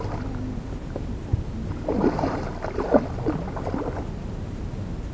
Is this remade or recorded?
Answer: recorded